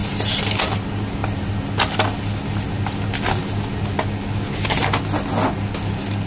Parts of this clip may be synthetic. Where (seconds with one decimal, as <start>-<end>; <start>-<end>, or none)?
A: none